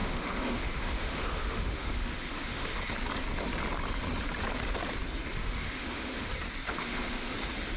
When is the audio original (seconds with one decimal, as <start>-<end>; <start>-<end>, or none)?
2.8-5.4; 6.3-6.7; 7.3-7.8

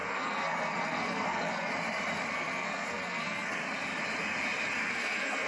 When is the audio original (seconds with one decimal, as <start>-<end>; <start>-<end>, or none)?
1.7-2.3; 3.6-4.9

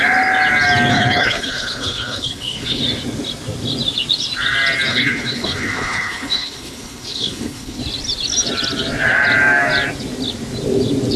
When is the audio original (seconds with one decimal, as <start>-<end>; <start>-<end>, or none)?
0.0-0.9; 2.8-4.9; 7.8-11.2

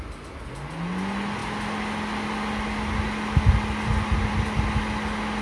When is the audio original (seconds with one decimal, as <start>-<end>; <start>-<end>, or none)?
0.0-5.4

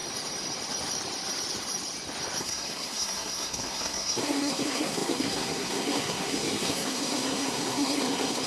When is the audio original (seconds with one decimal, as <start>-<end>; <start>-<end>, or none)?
0.0-2.4

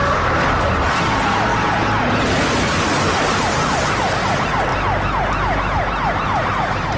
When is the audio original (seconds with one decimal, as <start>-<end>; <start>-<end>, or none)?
0.0-7.0